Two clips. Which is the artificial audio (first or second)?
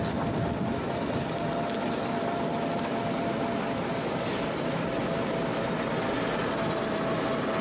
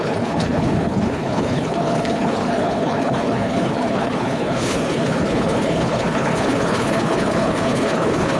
second